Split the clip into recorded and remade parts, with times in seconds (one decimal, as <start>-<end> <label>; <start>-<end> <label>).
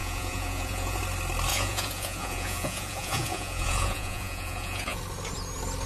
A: 0.0-1.0 remade; 1.0-1.5 recorded; 1.5-5.0 remade; 5.0-5.9 recorded